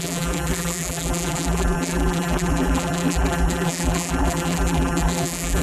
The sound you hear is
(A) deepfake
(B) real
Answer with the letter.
A